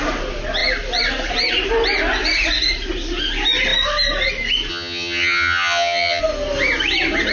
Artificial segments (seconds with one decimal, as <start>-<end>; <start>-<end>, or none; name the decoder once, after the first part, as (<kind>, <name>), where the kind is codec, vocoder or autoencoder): 4.7-6.2 (vocoder, HiFi-GAN)